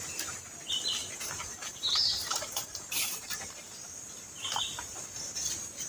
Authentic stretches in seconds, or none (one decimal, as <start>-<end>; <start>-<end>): 0.0-1.0; 3.7-5.9